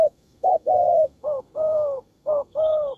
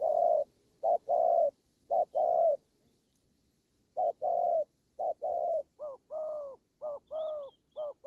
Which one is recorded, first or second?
second